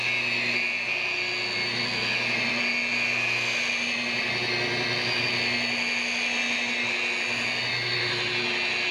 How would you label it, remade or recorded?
recorded